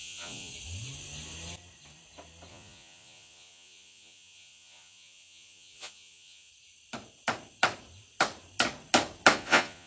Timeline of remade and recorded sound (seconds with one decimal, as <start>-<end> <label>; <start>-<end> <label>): 0.0-0.5 remade; 0.5-2.5 recorded; 2.5-6.5 remade; 6.5-9.3 recorded; 9.3-9.9 remade